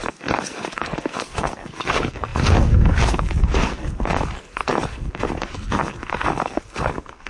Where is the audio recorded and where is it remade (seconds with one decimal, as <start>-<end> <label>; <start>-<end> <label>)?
0.0-7.3 remade